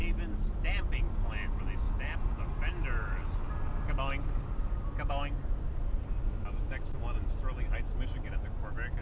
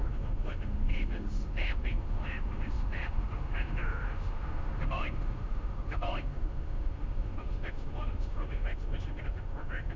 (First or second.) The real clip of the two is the first